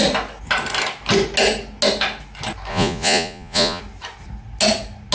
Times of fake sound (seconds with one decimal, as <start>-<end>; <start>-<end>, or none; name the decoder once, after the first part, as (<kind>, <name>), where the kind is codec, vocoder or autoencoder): 2.7-3.8 (vocoder, Vocos)

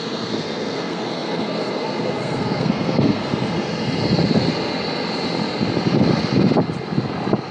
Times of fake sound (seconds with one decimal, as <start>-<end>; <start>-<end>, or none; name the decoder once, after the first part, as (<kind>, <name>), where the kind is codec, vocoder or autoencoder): 0.0-3.2 (codec, SNAC)

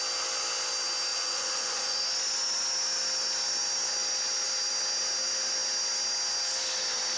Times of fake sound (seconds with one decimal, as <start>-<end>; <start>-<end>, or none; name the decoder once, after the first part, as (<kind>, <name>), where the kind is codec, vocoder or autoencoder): 1.1-2.0 (vocoder, Vocos)

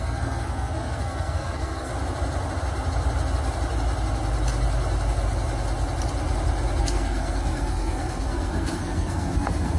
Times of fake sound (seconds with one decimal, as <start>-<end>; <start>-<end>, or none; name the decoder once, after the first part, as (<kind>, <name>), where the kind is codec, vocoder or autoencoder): 0.0-1.9 (codec, SNAC); 6.8-9.8

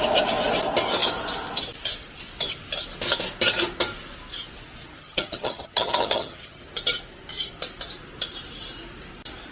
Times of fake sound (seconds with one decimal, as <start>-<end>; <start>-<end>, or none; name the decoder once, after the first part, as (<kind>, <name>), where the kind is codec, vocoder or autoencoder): 5.0-6.6 (vocoder, HiFi-GAN)